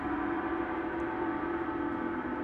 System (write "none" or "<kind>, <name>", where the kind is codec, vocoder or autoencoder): vocoder, BigVGAN v2